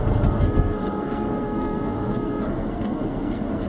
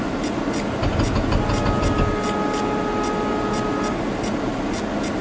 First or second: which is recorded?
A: second